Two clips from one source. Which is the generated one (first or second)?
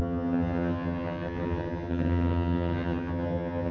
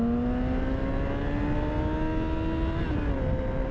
first